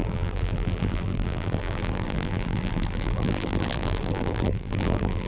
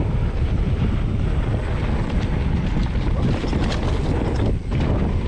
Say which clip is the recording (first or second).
second